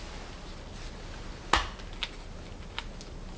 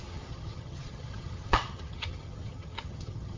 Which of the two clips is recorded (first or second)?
first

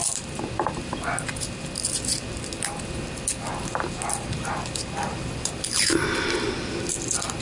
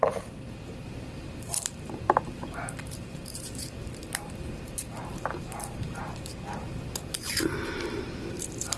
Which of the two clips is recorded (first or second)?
first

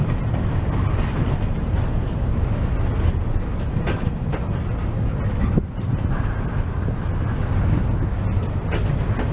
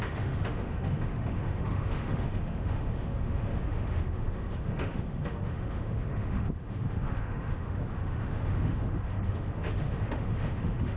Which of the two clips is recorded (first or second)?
first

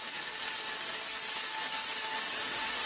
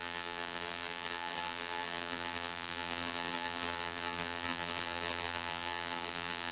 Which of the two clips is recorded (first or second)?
first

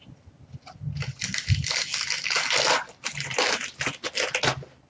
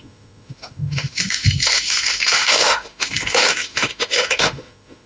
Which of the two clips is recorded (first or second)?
first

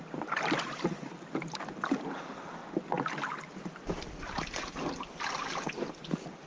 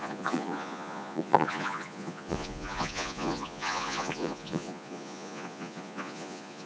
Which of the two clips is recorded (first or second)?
first